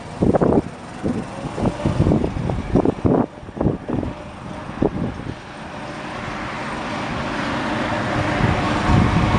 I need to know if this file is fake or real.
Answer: real